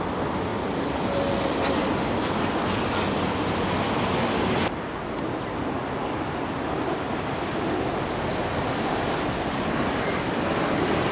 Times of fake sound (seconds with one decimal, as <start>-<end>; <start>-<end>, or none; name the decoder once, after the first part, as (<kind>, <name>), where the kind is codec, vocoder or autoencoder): none